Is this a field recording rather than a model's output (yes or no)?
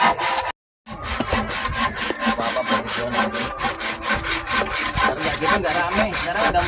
yes